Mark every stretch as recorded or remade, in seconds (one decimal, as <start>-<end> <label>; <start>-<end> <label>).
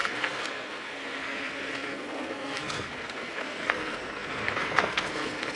0.0-5.6 remade